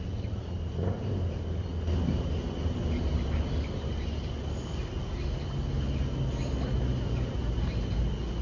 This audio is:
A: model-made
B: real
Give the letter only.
B